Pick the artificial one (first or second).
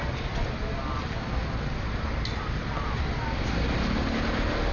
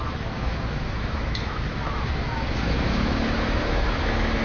second